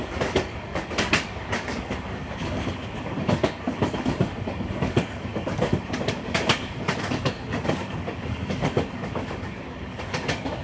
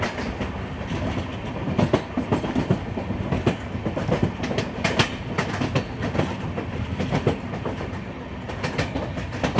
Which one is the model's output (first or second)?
first